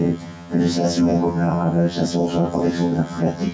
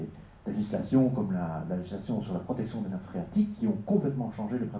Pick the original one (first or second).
second